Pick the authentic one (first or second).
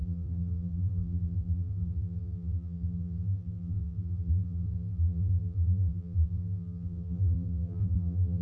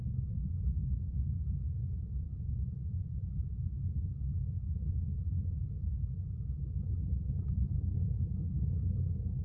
second